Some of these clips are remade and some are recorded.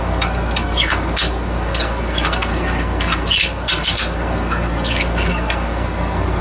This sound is remade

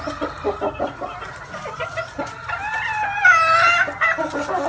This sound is recorded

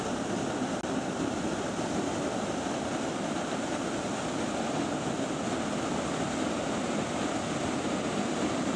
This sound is recorded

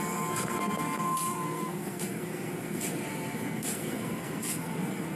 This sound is remade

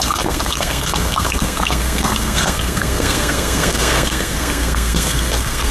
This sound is remade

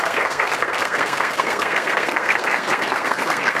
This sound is remade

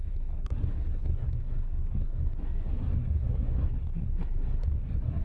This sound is remade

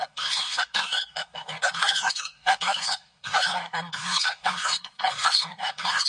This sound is remade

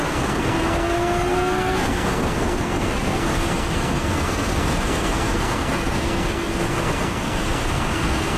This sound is remade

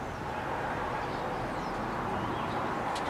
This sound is recorded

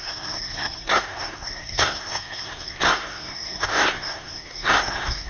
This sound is remade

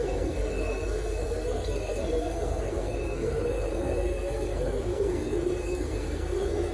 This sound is remade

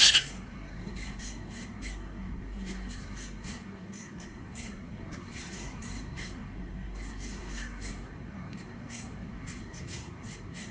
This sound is remade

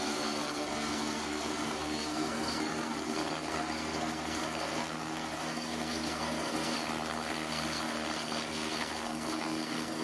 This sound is remade